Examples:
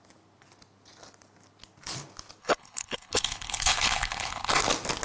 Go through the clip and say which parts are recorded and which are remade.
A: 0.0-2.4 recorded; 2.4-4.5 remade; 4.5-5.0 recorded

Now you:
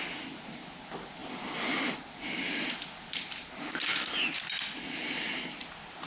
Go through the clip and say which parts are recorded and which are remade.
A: 0.0-6.1 recorded

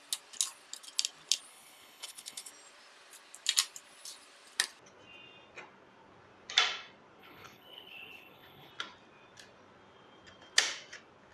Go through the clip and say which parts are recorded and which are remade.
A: 0.0-1.5 recorded; 1.5-2.5 remade; 2.5-7.2 recorded; 7.2-8.7 remade; 8.7-11.3 recorded